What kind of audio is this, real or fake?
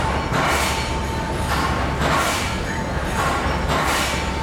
real